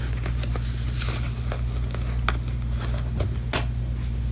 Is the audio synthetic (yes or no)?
no